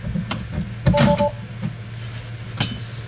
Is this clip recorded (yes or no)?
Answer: yes